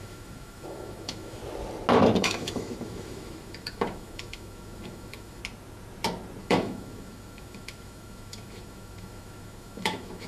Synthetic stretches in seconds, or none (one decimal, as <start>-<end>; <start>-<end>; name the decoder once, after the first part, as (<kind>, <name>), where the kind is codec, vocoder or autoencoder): 0.0-1.4 (autoencoder, DAC-VAE); 2.2-5.4; 6.4-10.3